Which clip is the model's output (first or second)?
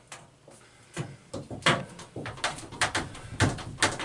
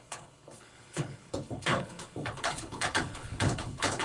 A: second